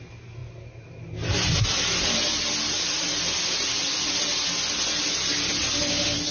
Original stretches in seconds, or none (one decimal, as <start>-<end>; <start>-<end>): 0.0-6.3